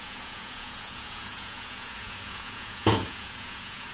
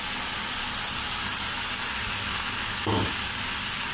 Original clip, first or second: second